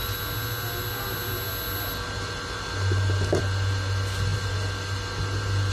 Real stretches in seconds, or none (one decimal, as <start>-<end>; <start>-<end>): 0.0-5.7